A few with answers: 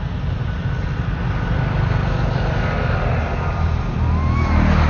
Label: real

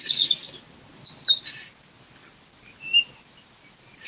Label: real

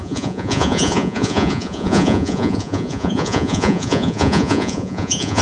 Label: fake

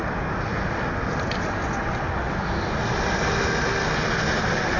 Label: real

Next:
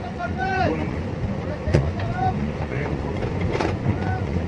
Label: fake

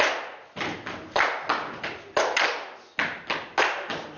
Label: real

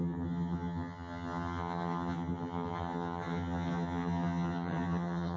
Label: fake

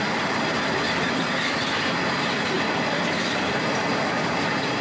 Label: real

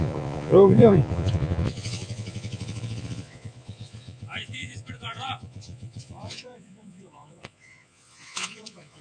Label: fake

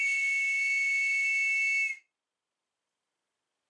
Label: real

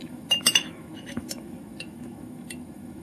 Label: fake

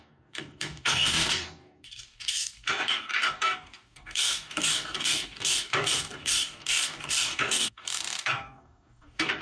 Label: fake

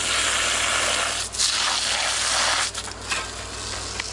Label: real